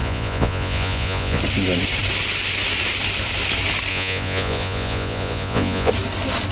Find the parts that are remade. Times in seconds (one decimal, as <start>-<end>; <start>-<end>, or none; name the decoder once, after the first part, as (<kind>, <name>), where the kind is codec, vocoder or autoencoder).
0.0-1.4 (vocoder, Vocos); 3.9-5.9